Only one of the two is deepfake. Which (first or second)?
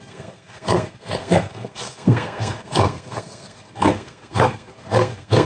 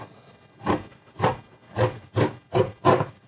first